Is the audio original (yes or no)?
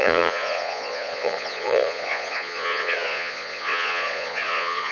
no